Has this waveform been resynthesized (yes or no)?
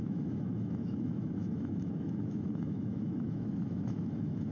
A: yes